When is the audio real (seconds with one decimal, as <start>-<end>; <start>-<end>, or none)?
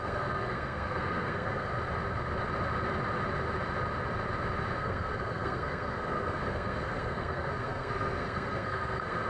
1.7-4.8